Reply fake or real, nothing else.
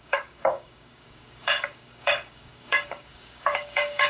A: fake